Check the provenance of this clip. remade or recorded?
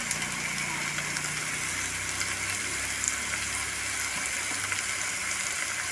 recorded